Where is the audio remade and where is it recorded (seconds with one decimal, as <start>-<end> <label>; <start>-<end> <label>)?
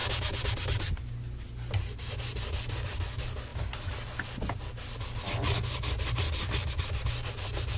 0.0-7.8 recorded